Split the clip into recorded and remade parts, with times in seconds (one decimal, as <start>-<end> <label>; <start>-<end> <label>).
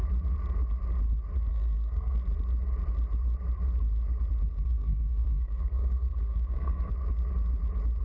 0.0-1.5 recorded; 1.5-2.2 remade; 2.2-4.5 recorded; 4.5-6.9 remade; 6.9-8.0 recorded